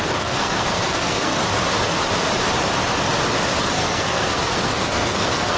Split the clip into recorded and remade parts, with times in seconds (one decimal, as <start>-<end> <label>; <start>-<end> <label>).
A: 0.0-1.4 remade; 1.4-3.6 recorded; 3.6-5.6 remade